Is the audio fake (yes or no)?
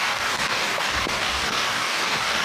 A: yes